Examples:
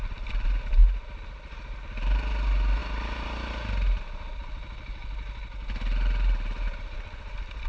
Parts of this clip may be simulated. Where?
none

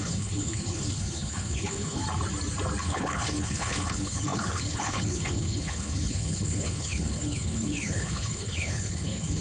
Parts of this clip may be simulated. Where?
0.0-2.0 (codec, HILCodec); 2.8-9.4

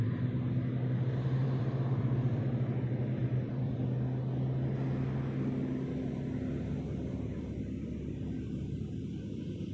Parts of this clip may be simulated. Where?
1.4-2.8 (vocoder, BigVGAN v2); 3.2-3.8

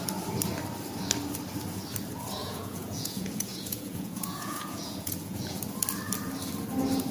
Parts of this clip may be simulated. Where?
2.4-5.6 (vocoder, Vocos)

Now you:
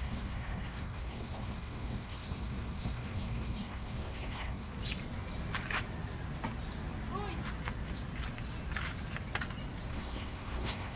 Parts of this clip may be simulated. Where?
0.0-4.7 (codec, SNAC); 9.9-11.0